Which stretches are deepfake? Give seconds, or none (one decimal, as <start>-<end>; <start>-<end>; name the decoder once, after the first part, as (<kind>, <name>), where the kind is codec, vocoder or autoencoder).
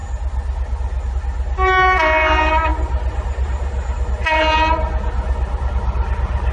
none